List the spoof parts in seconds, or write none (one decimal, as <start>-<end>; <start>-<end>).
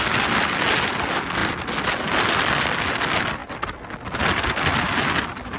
none